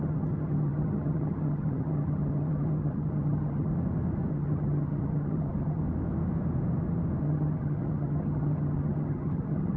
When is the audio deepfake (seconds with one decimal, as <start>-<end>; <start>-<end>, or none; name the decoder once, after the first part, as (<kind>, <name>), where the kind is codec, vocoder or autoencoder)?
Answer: 0.0-3.7 (vocoder, HiFi-GAN); 4.3-5.8; 7.2-9.8